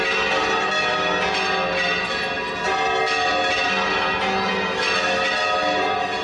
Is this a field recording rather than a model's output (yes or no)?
yes